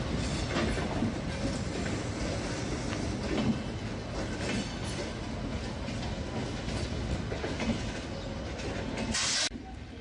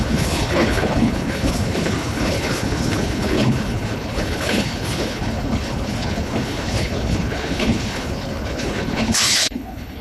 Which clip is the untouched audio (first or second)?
first